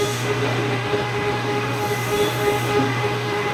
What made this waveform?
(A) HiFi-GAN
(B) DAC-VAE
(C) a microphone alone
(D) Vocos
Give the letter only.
B